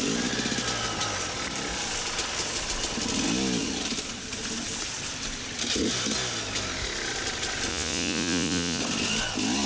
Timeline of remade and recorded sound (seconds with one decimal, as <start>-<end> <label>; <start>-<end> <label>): 0.0-7.7 recorded; 7.7-8.8 remade; 8.8-9.7 recorded